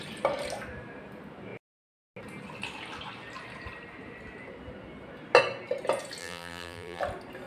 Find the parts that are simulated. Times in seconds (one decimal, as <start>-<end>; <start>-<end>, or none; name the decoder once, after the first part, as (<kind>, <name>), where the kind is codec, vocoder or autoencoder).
6.2-7.0 (vocoder, BigVGAN v2)